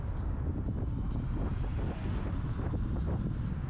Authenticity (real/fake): real